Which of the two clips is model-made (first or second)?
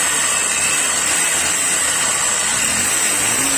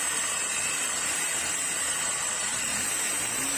second